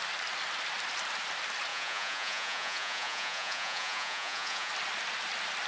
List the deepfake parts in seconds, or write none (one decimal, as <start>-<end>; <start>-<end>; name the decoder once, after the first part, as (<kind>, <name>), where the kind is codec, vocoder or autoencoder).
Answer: 1.7-4.7 (vocoder, Vocos)